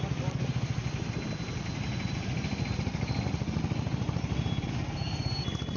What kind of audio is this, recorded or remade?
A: recorded